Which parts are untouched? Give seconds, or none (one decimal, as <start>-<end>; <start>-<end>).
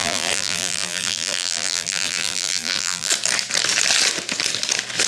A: 3.1-5.1